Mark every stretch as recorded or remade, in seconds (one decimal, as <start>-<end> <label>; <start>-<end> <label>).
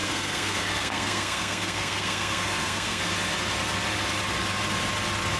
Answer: 0.0-3.0 remade; 3.0-5.4 recorded